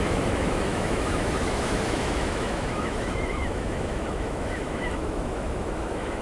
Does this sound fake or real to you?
fake